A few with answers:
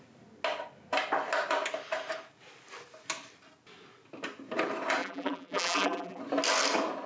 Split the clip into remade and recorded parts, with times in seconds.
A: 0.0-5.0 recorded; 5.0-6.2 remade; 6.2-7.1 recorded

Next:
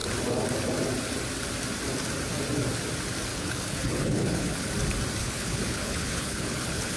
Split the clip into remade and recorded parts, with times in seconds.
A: 0.0-3.3 recorded; 3.3-4.7 remade; 4.7-5.2 recorded; 5.2-7.0 remade

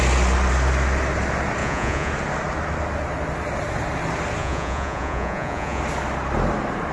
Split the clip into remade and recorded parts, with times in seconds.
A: 0.0-1.6 recorded; 1.6-2.1 remade; 2.1-4.4 recorded; 4.4-5.8 remade; 5.8-6.9 recorded